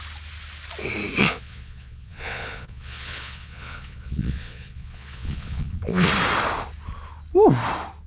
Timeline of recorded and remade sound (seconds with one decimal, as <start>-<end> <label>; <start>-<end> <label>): 0.0-1.2 recorded; 1.2-6.1 remade; 6.1-8.1 recorded